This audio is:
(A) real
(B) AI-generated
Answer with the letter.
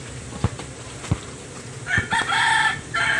B